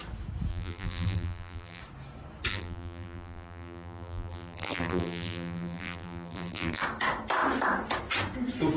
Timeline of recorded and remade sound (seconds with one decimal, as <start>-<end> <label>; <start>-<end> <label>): 0.0-0.5 recorded; 0.5-1.8 remade; 1.8-2.5 recorded; 2.5-6.8 remade; 6.8-8.8 recorded